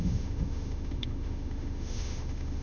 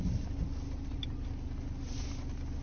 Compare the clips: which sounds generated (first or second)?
first